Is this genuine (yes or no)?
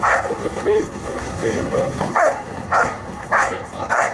no